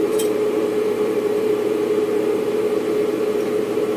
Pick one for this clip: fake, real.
fake